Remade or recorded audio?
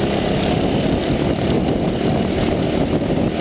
recorded